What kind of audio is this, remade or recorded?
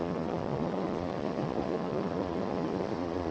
remade